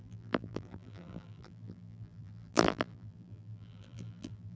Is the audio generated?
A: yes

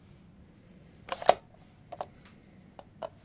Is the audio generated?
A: no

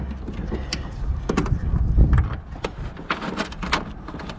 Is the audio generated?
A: no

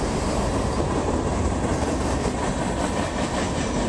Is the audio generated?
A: no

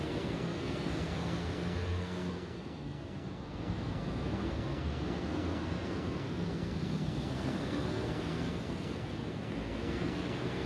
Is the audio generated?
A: yes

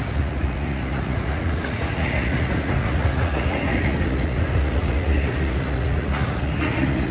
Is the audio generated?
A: yes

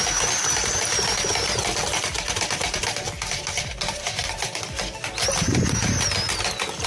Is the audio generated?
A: no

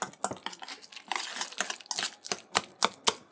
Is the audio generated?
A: no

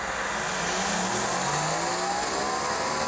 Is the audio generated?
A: no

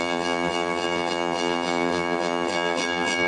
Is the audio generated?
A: yes